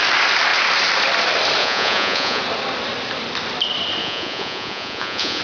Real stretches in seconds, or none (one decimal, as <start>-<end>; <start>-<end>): 0.0-1.6; 2.4-4.0